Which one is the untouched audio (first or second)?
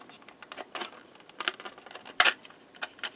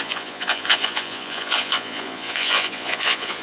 first